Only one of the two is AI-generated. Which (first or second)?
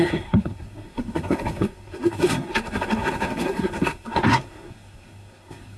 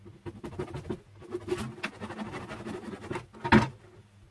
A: first